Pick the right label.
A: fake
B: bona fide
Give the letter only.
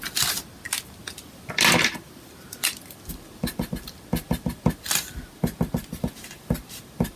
B